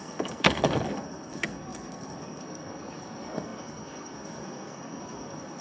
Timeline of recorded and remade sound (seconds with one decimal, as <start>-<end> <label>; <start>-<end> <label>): 0.0-5.6 remade